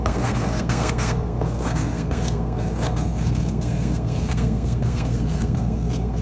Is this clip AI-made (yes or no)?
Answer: yes